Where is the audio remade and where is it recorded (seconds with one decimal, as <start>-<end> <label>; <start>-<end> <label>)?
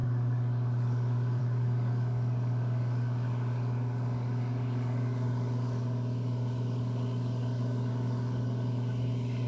0.0-9.5 remade